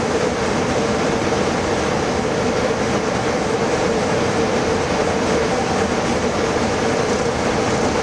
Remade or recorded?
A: remade